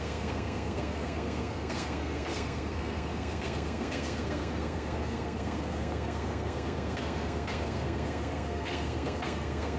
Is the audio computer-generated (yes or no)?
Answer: yes